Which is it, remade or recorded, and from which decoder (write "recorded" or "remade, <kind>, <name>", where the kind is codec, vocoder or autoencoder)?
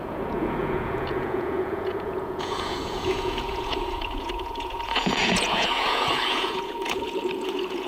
remade, vocoder, Vocos